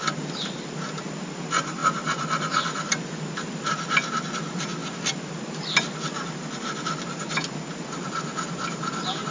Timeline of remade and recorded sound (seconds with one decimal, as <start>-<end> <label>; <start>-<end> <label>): 0.0-9.3 recorded